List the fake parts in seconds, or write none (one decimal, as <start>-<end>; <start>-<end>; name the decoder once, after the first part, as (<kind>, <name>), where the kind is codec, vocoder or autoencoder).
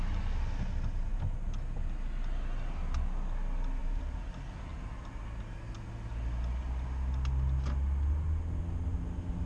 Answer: 3.8-4.3 (vocoder, BigVGAN v2)